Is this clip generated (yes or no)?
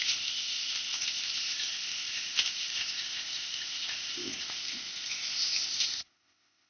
yes